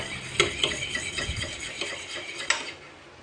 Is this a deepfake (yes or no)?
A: no